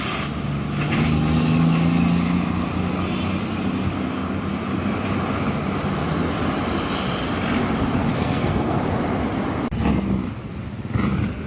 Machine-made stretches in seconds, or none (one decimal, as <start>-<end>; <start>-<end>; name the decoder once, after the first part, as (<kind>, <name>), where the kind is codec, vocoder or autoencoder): 8.0-8.8 (codec, SNAC)